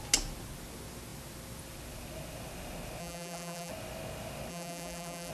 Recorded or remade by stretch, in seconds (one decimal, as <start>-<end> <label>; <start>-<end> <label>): 0.0-3.0 recorded; 3.0-3.7 remade; 3.7-4.5 recorded; 4.5-5.3 remade